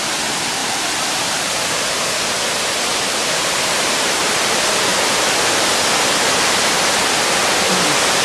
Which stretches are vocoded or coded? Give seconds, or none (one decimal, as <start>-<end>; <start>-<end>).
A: 0.6-1.4; 2.9-4.2